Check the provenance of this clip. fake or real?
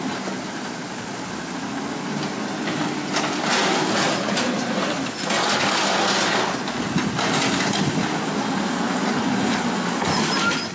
real